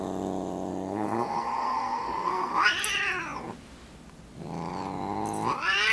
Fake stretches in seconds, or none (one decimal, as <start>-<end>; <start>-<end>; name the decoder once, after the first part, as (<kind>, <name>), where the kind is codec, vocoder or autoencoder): 0.7-2.5 (codec, SNAC)